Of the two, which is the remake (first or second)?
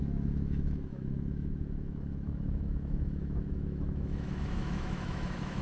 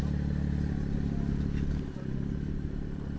first